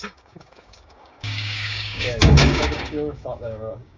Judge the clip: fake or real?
fake